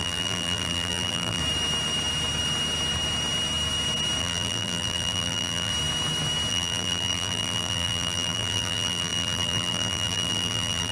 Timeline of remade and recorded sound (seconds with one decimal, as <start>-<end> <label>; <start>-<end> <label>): 0.0-1.4 remade; 1.4-4.2 recorded; 4.2-5.7 remade; 5.7-6.5 recorded; 6.5-10.9 remade